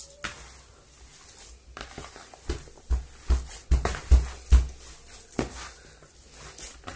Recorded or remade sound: recorded